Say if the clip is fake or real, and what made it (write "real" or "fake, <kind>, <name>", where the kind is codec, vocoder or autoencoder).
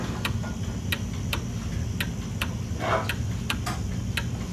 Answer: real